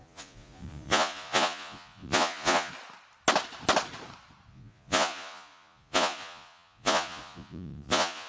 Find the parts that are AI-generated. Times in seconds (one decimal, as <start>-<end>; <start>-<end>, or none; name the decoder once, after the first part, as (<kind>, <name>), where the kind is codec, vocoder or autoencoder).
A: 0.0-2.7 (vocoder, Vocos); 4.5-8.3